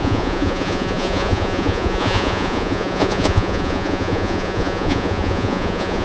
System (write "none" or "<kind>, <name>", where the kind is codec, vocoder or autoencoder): vocoder, Vocos